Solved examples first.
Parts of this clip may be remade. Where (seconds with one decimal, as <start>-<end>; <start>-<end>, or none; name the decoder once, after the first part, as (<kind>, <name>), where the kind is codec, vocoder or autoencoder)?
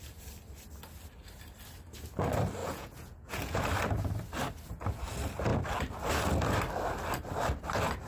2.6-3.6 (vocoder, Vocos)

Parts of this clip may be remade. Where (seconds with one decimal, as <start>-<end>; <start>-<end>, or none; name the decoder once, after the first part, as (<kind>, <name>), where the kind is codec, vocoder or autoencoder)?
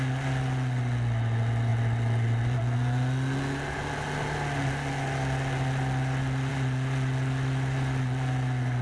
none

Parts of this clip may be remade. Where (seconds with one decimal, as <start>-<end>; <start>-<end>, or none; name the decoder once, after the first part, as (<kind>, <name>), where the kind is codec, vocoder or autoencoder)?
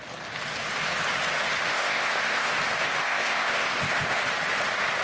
1.7-2.5 (codec, ZipCodec); 3.0-4.2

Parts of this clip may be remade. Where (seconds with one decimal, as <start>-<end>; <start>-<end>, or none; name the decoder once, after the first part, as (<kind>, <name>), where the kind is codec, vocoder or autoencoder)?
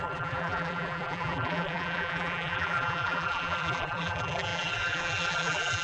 0.0-5.8 (vocoder, BigVGAN v2)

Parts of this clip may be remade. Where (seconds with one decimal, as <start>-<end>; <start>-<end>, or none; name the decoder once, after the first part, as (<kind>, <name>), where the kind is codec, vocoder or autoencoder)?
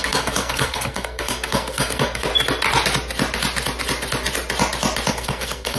0.0-2.3 (codec, SNAC); 5.1-5.8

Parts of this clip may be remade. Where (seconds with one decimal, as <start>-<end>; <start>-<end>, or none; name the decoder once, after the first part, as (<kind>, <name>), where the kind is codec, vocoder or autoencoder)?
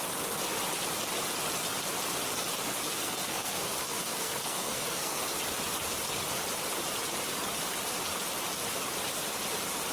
3.0-5.2 (codec, SNAC)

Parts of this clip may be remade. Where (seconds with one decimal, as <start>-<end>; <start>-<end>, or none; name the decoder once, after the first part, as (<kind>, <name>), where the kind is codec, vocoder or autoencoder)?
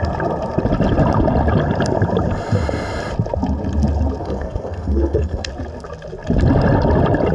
4.2-5.5 (codec, SNAC)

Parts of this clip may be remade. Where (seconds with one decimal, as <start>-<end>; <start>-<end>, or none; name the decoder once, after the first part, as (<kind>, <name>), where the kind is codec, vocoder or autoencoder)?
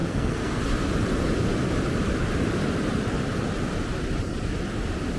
0.0-0.6 (codec, SNAC)